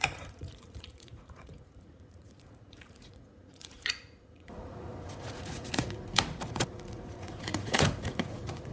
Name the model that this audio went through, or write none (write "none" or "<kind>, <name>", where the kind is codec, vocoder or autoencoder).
vocoder, Vocos